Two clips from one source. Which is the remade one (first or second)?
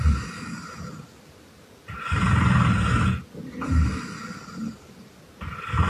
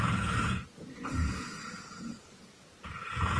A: second